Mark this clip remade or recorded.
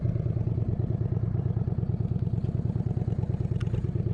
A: recorded